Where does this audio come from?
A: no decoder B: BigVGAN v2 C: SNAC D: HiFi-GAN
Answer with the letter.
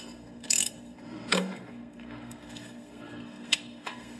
C